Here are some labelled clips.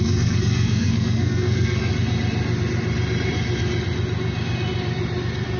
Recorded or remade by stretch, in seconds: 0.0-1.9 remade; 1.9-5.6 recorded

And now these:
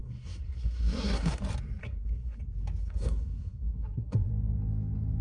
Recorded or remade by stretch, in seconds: 0.0-1.4 remade; 1.4-1.8 recorded; 1.8-2.4 remade; 2.4-2.8 recorded; 2.8-4.3 remade; 4.3-5.2 recorded

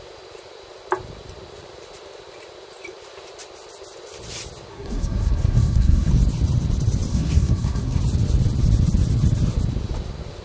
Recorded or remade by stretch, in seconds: 0.0-4.7 recorded; 4.7-6.1 remade; 6.1-7.1 recorded; 7.1-8.0 remade; 8.0-10.4 recorded

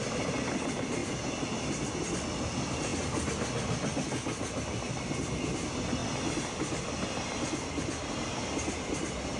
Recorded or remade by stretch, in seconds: 0.0-9.4 recorded

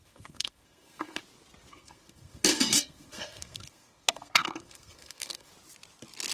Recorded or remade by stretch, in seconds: 0.0-1.2 remade; 1.2-1.7 recorded; 1.7-5.5 remade; 5.5-6.3 recorded